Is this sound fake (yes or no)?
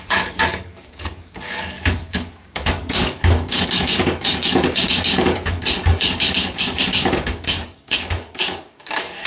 yes